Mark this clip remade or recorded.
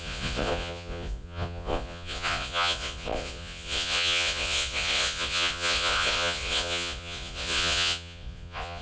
remade